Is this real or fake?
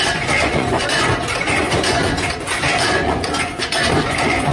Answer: fake